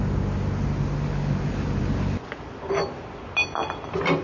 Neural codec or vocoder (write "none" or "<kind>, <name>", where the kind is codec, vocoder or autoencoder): none